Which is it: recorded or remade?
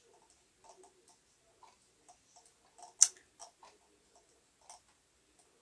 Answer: recorded